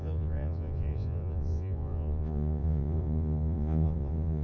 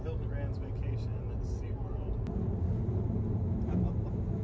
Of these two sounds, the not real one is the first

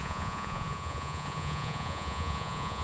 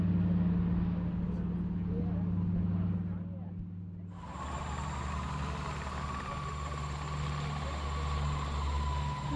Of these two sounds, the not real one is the first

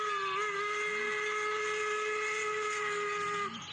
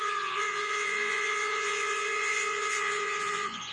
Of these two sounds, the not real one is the second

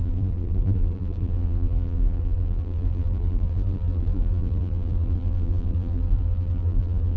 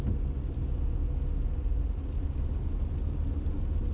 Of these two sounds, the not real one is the first